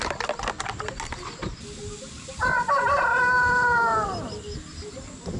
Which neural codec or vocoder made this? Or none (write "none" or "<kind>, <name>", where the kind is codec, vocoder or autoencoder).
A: none